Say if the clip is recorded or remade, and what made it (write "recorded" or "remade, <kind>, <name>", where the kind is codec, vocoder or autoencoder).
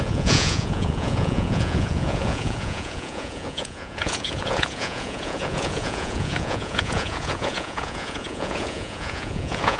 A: remade, vocoder, Vocos